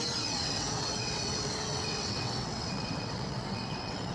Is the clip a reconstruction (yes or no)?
yes